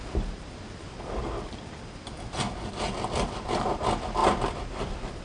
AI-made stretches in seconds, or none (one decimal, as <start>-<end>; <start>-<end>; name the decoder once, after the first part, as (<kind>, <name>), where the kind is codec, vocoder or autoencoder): none